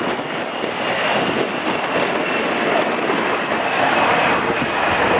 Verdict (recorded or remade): recorded